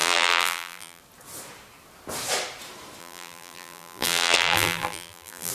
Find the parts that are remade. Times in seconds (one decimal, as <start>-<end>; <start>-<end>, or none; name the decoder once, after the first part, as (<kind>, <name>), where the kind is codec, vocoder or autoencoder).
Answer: 0.0-1.0 (vocoder, BigVGAN v2); 3.0-5.5